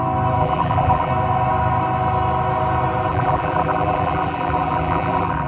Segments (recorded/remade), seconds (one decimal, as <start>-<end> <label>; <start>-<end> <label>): 0.0-0.4 recorded; 0.4-1.1 remade; 1.1-3.1 recorded; 3.1-5.5 remade